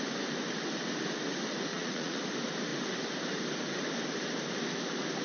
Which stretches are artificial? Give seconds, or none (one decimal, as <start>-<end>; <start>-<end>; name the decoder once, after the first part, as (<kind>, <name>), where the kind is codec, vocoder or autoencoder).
1.7-2.2 (vocoder, Vocos)